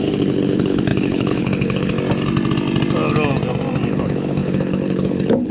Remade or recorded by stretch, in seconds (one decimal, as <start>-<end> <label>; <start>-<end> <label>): 0.0-1.9 remade; 1.9-3.9 recorded; 3.9-5.5 remade